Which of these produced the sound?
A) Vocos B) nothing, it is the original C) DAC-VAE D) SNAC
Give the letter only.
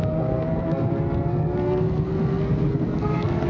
D